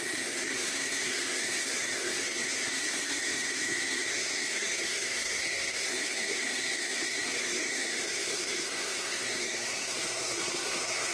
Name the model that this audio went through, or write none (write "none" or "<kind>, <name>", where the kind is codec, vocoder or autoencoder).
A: codec, SNAC